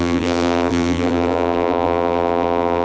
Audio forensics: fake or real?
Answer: fake